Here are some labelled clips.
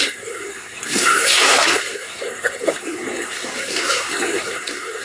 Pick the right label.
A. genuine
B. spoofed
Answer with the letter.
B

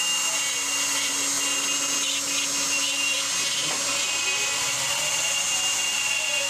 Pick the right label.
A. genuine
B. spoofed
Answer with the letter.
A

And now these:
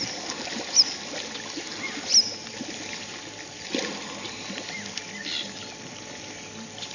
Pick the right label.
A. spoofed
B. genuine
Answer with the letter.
B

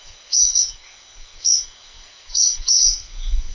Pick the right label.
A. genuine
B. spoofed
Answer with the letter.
B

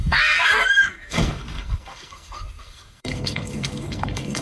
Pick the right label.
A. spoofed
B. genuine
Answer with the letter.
A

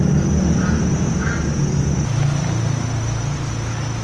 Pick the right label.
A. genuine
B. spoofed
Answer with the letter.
A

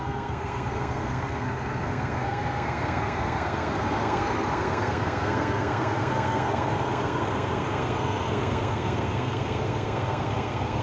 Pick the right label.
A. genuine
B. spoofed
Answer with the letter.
B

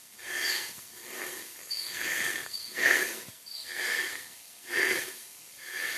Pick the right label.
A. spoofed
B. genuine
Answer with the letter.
A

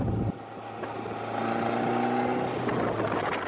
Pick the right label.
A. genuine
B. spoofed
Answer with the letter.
A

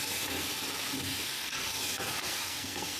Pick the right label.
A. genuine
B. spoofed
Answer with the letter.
B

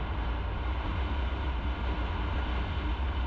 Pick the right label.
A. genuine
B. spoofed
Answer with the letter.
A